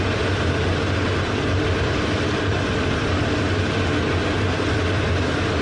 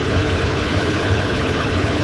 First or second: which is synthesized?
second